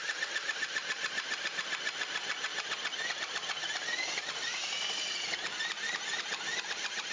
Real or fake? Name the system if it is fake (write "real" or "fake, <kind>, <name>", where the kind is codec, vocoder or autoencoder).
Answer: real